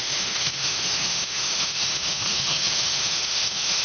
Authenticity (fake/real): fake